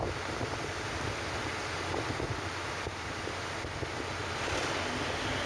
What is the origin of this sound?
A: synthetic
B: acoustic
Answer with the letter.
B